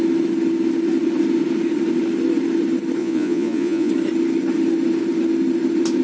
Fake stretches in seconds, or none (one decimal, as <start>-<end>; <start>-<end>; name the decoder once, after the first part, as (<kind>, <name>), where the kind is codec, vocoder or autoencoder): 3.0-3.9 (vocoder, Vocos)